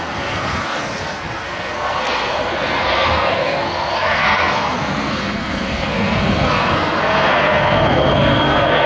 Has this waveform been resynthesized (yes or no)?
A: yes